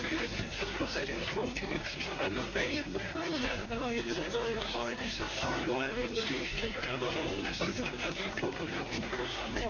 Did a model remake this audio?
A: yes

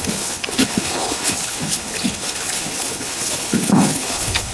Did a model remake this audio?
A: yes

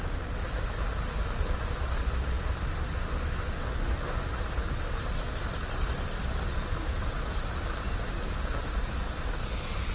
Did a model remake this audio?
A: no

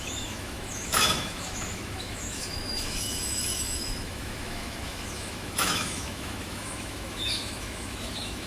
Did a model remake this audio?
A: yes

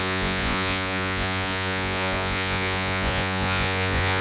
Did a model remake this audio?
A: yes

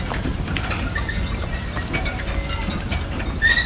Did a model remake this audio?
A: no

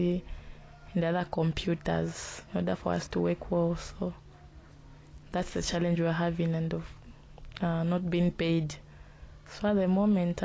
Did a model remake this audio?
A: no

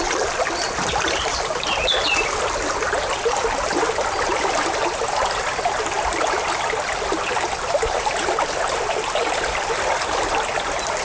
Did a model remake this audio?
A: no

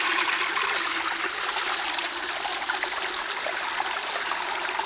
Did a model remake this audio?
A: no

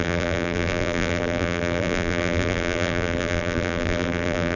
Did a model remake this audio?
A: yes